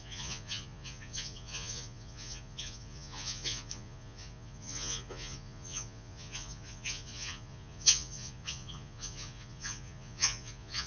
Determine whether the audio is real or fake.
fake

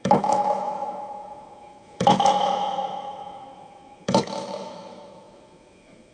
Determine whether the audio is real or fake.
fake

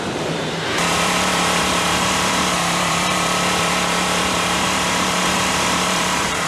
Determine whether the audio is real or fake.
fake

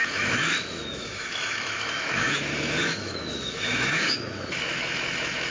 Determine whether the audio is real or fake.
fake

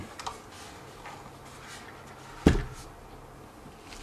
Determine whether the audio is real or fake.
real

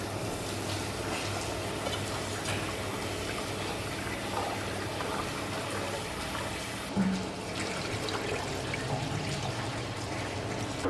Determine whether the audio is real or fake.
real